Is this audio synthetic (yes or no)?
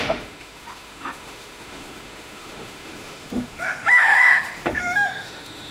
yes